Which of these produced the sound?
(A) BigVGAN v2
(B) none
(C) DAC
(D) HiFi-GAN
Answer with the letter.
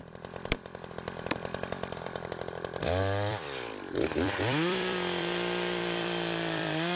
A